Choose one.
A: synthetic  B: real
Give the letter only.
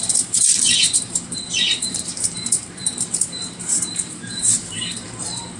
A